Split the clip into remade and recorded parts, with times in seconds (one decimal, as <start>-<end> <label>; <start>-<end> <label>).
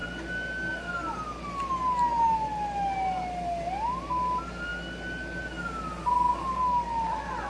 0.0-7.5 recorded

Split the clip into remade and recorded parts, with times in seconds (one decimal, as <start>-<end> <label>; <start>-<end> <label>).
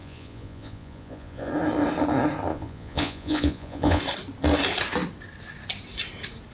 0.0-1.5 remade; 1.5-2.5 recorded; 2.5-4.0 remade; 4.0-6.5 recorded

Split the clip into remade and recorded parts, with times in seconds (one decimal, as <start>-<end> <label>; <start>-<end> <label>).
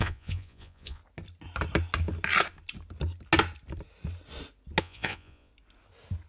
0.0-1.0 remade; 1.0-4.8 recorded; 4.8-5.5 remade; 5.5-6.3 recorded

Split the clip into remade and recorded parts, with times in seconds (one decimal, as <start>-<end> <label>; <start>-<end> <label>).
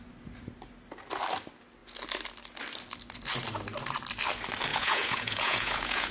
0.0-4.7 recorded; 4.7-6.1 remade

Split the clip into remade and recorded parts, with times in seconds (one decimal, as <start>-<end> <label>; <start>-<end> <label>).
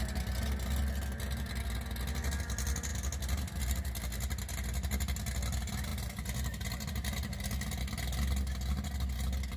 0.0-9.6 recorded